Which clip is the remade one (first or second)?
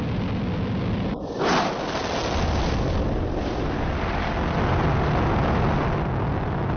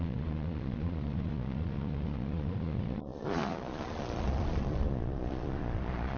second